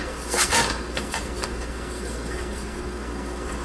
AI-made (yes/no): yes